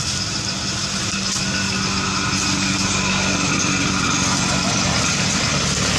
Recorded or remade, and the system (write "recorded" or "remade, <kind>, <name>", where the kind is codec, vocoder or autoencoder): recorded